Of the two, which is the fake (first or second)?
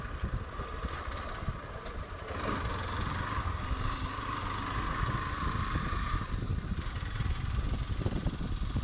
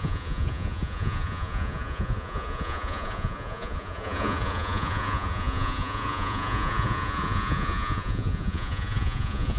second